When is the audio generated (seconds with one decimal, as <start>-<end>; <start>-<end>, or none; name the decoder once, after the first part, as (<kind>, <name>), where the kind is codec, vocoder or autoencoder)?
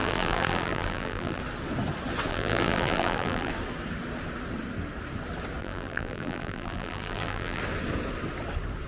0.0-1.4 (vocoder, BigVGAN v2); 2.3-3.5; 5.6-7.6